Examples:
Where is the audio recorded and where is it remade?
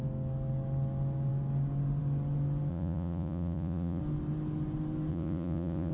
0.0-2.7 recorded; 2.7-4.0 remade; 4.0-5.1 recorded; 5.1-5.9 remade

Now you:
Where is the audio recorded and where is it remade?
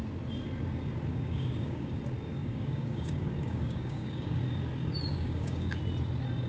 0.0-1.1 recorded; 1.1-2.0 remade; 2.0-2.4 recorded; 2.4-4.4 remade; 4.4-5.1 recorded; 5.1-5.8 remade; 5.8-6.5 recorded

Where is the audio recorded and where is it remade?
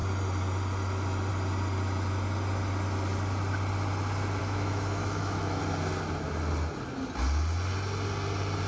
0.0-4.4 recorded; 4.4-5.6 remade; 5.6-8.7 recorded